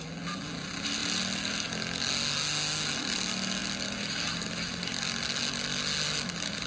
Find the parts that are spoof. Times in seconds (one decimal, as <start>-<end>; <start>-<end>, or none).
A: none